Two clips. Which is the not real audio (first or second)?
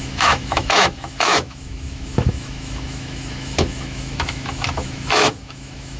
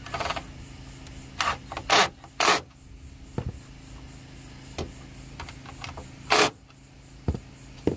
first